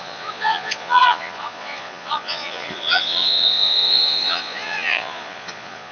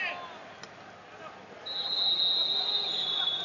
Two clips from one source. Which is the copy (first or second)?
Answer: first